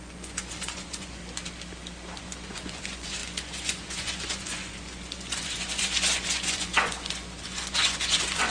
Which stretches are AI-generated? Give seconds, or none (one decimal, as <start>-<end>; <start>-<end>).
0.0-1.2; 2.2-8.5